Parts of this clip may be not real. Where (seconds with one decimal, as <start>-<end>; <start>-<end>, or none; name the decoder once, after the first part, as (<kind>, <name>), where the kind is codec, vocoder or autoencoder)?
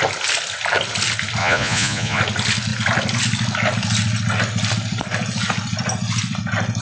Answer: 1.4-2.2 (vocoder, Vocos)